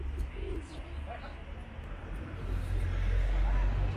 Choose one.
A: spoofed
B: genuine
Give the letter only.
B